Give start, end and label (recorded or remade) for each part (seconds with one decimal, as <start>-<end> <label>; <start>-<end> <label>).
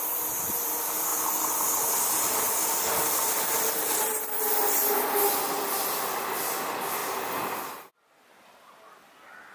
0.0-9.5 recorded